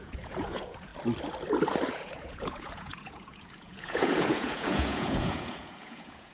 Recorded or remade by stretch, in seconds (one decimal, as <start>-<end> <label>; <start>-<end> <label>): 0.0-0.9 remade; 0.9-1.9 recorded; 1.9-6.3 remade

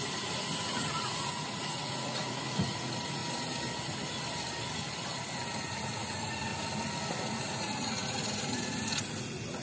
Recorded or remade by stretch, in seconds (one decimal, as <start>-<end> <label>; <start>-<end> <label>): 0.0-3.2 remade; 3.2-5.8 recorded; 5.8-6.5 remade; 6.5-7.4 recorded; 7.4-9.6 remade

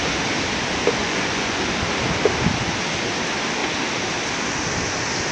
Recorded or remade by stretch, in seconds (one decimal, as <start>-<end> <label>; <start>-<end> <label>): 0.0-1.0 recorded; 1.0-1.6 remade; 1.6-5.3 recorded

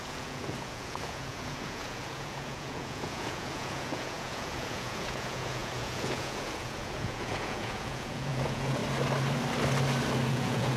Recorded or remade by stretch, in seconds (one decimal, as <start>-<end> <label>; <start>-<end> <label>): 0.0-8.8 remade; 8.8-10.3 recorded; 10.3-10.8 remade